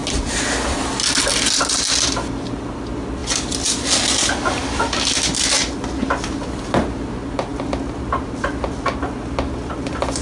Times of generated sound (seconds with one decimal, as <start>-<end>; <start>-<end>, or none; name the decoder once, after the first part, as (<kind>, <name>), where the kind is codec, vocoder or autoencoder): none

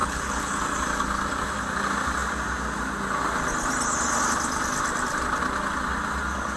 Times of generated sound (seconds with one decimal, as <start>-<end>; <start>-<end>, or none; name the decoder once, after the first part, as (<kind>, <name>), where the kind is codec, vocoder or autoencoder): 0.0-0.6 (codec, HILCodec)

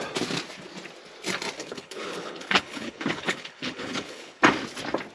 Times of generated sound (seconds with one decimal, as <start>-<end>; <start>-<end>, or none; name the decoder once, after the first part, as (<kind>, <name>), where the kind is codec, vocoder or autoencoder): 1.6-4.4 (codec, HILCodec)

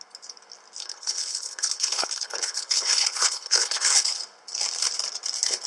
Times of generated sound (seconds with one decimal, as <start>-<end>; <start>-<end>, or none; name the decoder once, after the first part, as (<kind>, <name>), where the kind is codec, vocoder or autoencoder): 0.8-4.2 (codec, HILCodec)

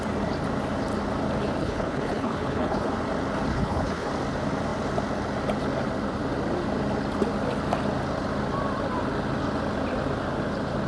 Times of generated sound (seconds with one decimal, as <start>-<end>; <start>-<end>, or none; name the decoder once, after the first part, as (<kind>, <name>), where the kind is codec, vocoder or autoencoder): 1.6-2.9 (codec, HILCodec); 3.5-4.1

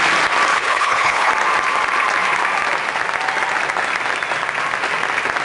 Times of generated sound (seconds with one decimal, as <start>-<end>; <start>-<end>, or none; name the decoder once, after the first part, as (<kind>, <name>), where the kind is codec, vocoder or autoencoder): 0.5-1.3 (codec, HILCodec)